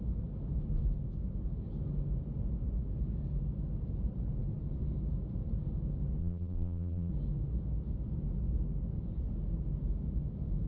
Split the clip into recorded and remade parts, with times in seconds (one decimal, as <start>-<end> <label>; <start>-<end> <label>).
0.0-6.2 recorded; 6.2-7.1 remade; 7.1-10.7 recorded